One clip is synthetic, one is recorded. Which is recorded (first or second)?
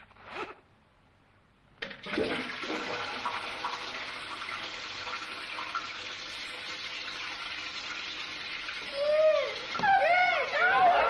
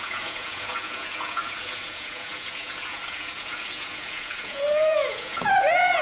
first